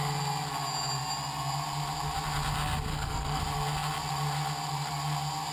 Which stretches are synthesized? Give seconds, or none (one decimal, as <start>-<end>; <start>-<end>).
2.9-3.4